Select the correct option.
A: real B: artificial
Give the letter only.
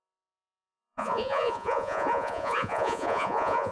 B